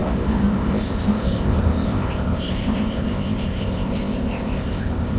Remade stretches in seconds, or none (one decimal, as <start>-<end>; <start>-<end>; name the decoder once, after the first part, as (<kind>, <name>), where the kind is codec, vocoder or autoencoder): 0.0-5.2 (codec, ZipCodec)